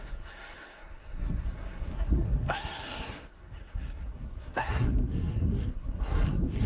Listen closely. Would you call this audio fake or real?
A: fake